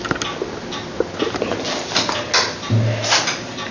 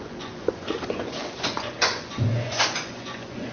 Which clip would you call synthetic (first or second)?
second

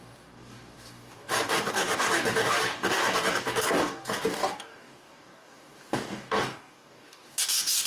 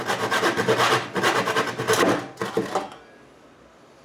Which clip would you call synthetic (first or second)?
first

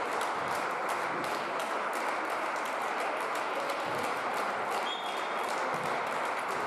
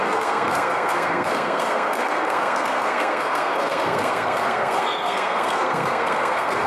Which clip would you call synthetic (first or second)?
second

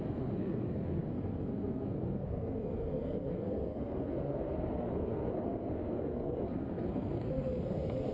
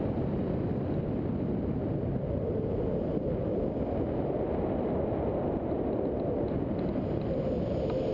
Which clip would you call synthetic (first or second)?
first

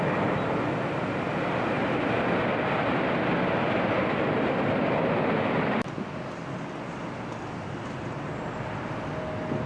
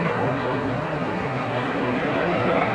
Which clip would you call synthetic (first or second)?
second